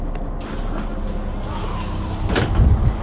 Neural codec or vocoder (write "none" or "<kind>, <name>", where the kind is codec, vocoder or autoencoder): none